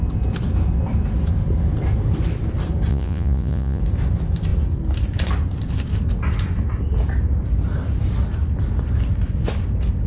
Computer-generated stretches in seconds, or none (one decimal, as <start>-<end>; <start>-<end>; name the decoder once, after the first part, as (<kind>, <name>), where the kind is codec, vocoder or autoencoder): 2.9-3.8 (vocoder, Vocos)